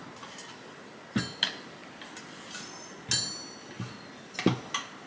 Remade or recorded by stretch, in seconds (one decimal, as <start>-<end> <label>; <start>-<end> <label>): 0.0-5.1 recorded